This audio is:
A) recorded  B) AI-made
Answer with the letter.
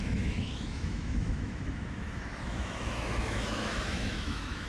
B